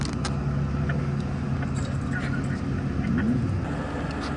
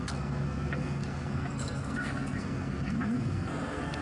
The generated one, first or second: second